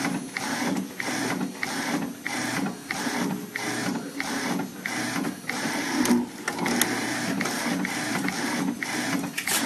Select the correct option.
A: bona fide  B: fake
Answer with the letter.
A